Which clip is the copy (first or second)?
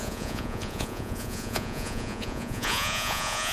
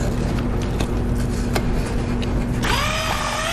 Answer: first